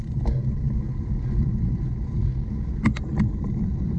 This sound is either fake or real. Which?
real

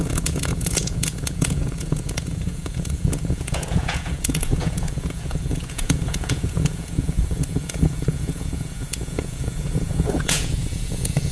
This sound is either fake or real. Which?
fake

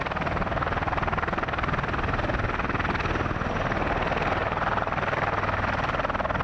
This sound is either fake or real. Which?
real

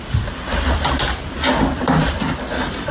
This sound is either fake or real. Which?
fake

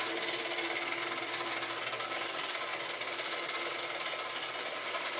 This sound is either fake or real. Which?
real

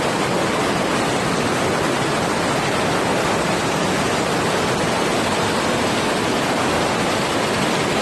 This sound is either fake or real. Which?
real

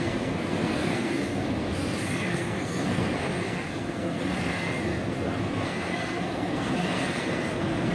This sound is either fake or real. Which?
fake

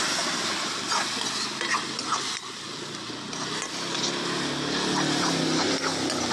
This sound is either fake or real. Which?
real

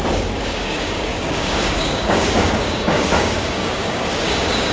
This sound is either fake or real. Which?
fake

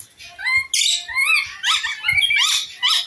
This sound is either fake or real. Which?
real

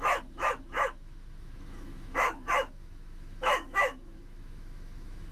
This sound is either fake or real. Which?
fake